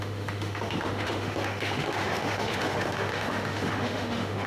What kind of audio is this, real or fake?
fake